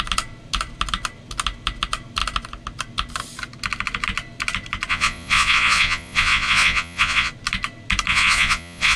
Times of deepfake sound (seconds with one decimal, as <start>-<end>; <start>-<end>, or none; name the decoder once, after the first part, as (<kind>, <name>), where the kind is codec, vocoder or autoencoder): 4.9-7.3 (vocoder, Vocos); 8.1-9.0